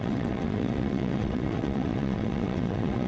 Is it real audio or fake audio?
fake